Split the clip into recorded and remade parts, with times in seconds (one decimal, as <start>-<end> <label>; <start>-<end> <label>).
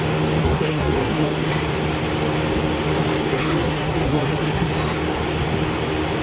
0.0-0.4 recorded; 0.4-1.5 remade; 1.5-3.3 recorded; 3.3-4.7 remade; 4.7-6.2 recorded